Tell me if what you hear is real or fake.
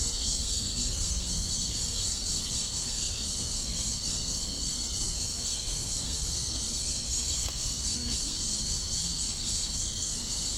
fake